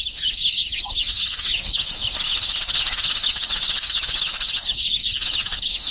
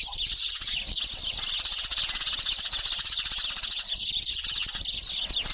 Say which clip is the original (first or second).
second